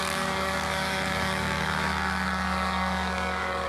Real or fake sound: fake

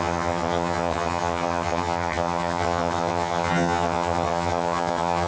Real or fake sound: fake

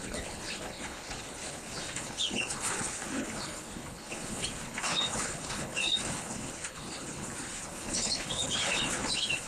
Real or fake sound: fake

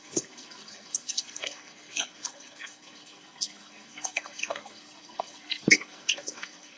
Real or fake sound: fake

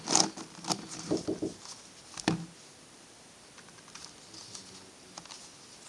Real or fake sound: real